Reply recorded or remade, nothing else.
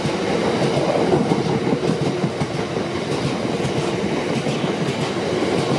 recorded